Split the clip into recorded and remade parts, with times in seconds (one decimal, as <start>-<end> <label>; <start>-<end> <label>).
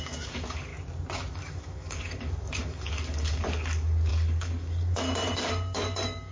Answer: 0.0-0.7 remade; 0.7-1.3 recorded; 1.3-6.3 remade